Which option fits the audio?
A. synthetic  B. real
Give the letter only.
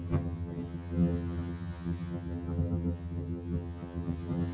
A